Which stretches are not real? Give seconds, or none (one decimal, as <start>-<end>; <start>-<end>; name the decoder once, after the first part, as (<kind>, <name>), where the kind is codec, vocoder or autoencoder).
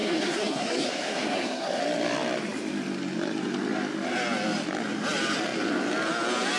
0.0-1.8 (codec, SNAC)